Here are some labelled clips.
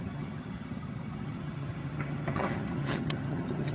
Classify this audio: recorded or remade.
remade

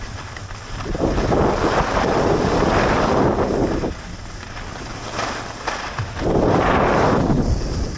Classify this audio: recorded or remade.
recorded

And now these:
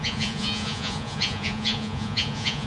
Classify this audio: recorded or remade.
remade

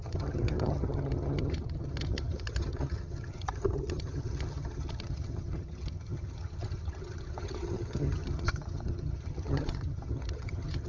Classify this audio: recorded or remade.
remade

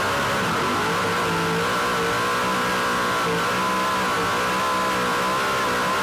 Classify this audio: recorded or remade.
recorded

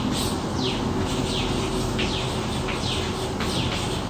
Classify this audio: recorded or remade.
recorded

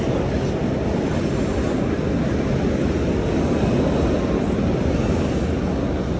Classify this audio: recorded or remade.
recorded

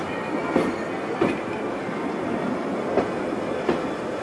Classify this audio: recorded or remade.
recorded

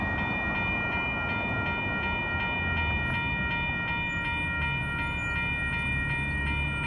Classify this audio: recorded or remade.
recorded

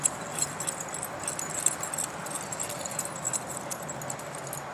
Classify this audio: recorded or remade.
recorded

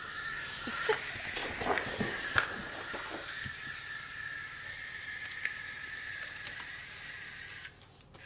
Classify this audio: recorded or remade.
recorded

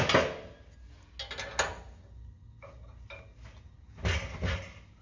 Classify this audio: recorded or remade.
recorded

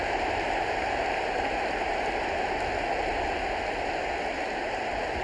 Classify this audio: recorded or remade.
recorded